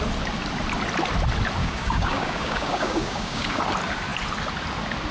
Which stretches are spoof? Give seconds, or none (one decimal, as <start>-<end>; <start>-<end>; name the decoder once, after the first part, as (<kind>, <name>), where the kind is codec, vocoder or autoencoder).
1.6-3.6 (codec, DAC)